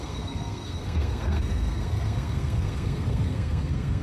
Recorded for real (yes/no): no